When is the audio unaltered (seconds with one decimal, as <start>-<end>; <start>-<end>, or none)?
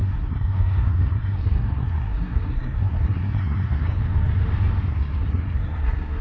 4.0-4.8